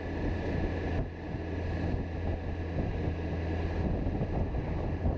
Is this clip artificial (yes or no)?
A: no